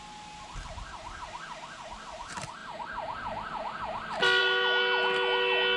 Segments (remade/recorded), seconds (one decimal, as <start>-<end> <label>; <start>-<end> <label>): 0.0-5.8 recorded